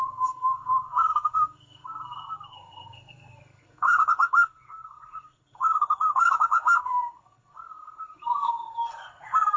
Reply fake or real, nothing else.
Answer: fake